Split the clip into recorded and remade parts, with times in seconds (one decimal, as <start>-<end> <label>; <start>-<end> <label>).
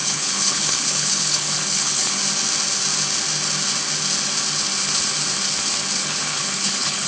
0.0-2.2 remade; 2.2-6.0 recorded; 6.0-7.1 remade